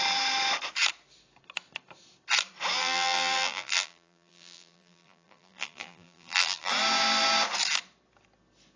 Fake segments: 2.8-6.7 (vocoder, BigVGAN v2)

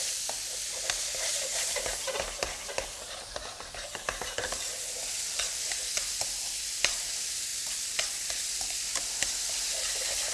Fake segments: 0.0-10.3 (vocoder, BigVGAN v2)

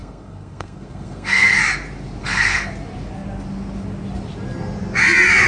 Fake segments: 0.0-1.6 (codec, SNAC); 2.2-2.7

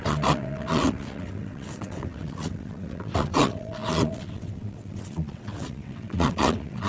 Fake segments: 0.0-6.9 (vocoder, WaveNeXt)

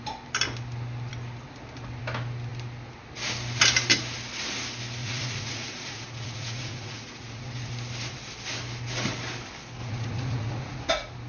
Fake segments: 5.0-7.7 (vocoder, Vocos); 9.8-10.9

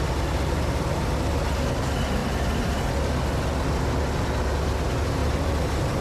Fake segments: 2.2-2.8 (vocoder, BigVGAN v2); 5.2-6.0

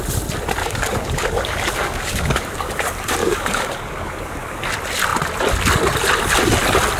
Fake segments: 0.6-2.7 (codec, DAC); 3.2-4.6

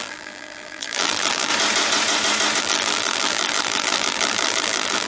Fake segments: 0.0-1.5 (vocoder, BigVGAN v2); 2.6-5.1